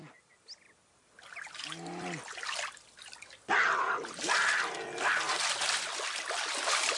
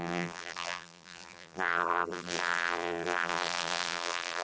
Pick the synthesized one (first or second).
second